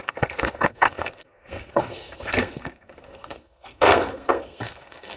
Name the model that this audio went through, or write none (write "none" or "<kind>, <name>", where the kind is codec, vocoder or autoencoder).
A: codec, SNAC